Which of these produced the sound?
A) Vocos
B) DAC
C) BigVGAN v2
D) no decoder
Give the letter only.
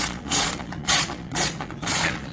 A